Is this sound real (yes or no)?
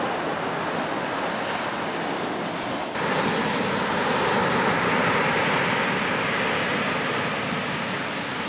yes